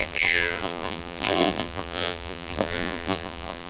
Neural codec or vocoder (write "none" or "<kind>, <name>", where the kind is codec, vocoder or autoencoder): vocoder, BigVGAN v2